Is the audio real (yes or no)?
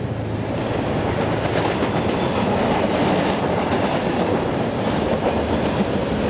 yes